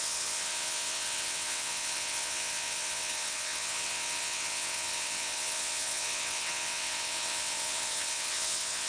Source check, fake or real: fake